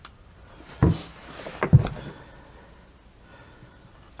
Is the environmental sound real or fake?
real